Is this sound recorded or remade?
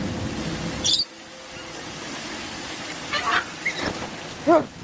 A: recorded